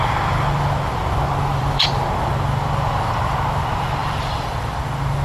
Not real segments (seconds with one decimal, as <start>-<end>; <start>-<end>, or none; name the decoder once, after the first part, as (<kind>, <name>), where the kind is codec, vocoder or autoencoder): 1.5-2.0 (vocoder, BigVGAN v2); 4.0-4.8